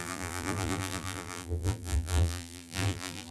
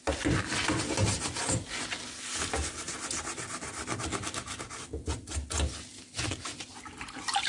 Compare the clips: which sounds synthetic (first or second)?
first